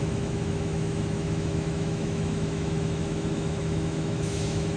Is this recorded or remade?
remade